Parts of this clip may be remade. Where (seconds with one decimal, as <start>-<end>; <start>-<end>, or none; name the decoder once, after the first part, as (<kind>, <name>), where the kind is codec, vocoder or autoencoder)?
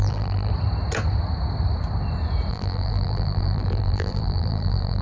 0.0-0.5 (vocoder, BigVGAN v2); 2.5-5.0